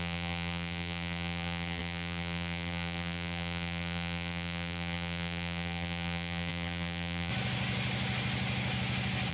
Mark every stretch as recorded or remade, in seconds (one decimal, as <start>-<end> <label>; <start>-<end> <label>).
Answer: 0.0-7.3 remade; 7.3-9.3 recorded